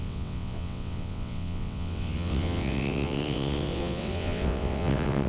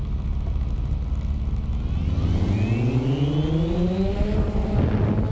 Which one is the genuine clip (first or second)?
second